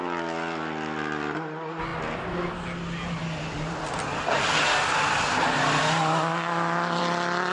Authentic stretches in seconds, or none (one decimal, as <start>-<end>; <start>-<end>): 0.0-7.5